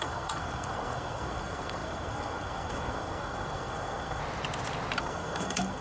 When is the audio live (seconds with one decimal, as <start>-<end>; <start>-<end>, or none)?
4.2-5.0